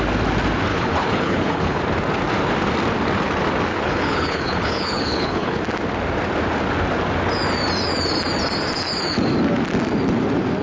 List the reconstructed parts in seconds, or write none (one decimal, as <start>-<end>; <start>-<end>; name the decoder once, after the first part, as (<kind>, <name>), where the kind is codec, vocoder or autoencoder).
0.7-1.8 (codec, HILCodec); 3.7-5.6